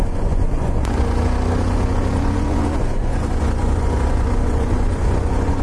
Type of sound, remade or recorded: remade